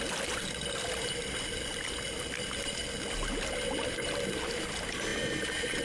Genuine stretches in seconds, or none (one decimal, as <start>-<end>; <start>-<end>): 0.0-5.8